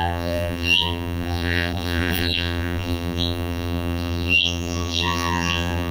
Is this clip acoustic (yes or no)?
no